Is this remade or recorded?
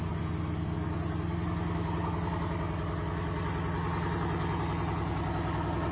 recorded